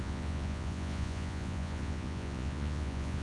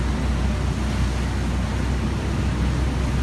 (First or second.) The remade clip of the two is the first